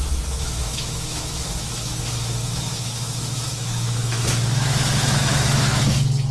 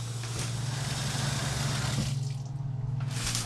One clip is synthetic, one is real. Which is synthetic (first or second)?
first